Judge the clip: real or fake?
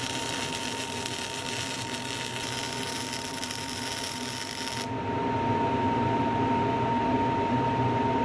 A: real